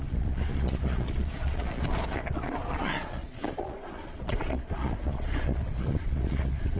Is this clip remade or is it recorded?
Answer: remade